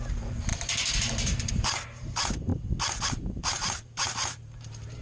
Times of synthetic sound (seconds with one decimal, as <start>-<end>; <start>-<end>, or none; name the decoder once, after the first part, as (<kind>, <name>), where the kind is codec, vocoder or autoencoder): 0.0-2.5 (vocoder, BigVGAN v2); 3.1-5.0